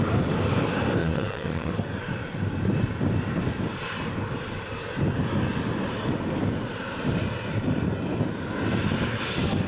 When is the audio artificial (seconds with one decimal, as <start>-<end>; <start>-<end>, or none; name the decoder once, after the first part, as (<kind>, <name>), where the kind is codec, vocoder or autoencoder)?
1.0-1.7 (vocoder, Vocos)